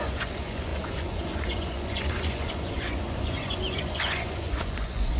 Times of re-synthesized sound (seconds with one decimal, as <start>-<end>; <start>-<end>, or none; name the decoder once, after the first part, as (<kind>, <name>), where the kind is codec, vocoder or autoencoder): 0.0-5.2 (vocoder, Vocos)